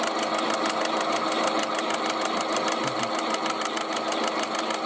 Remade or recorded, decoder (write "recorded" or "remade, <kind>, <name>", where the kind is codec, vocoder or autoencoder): recorded